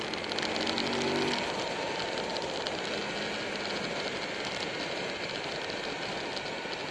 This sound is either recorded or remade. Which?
recorded